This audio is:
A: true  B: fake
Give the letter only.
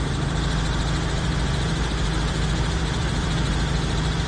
A